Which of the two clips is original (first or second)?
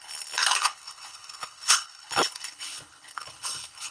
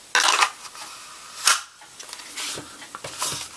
second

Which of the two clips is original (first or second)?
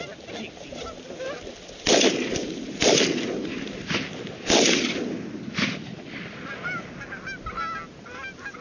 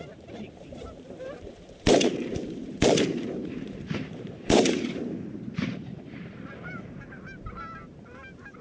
first